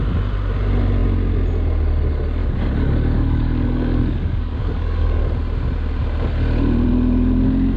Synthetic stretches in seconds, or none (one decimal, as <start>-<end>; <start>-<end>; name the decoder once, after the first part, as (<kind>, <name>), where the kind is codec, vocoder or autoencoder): 2.4-5.2 (codec, DAC)